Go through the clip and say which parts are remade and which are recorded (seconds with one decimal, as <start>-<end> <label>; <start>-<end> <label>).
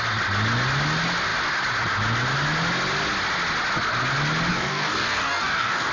0.0-4.5 recorded; 4.5-5.9 remade